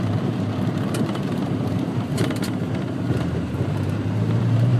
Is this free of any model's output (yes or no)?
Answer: no